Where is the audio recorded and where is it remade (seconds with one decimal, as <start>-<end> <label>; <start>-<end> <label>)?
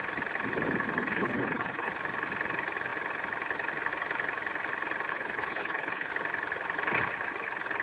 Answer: 0.0-1.0 recorded; 1.0-1.9 remade; 1.9-5.1 recorded; 5.1-6.1 remade; 6.1-7.8 recorded